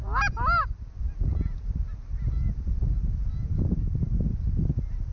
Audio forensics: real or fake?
real